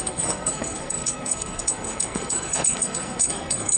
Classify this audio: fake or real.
fake